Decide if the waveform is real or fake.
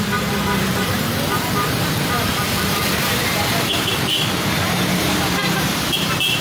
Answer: fake